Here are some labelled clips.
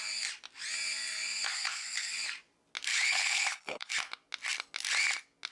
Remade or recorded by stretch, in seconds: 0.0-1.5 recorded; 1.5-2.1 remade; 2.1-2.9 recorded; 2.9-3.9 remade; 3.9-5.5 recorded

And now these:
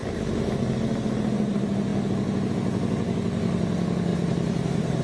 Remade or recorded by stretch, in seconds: 0.0-4.1 recorded; 4.1-5.0 remade

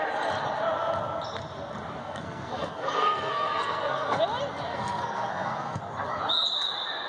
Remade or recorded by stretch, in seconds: 0.0-2.0 recorded; 2.0-4.2 remade; 4.2-4.7 recorded; 4.7-5.8 remade; 5.8-7.1 recorded

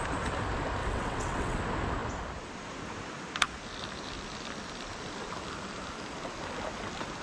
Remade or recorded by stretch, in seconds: 0.0-0.8 recorded; 0.8-1.6 remade; 1.6-7.2 recorded

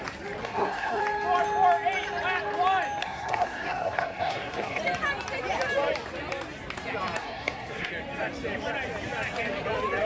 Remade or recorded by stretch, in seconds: 0.0-0.4 recorded; 0.4-1.0 remade; 1.0-3.0 recorded; 3.0-4.8 remade; 4.8-7.2 recorded; 7.2-7.9 remade; 7.9-10.1 recorded